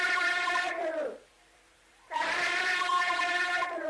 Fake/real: fake